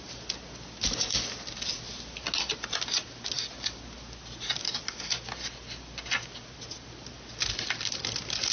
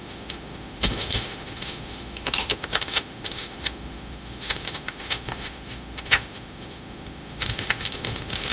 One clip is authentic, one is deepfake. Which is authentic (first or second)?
first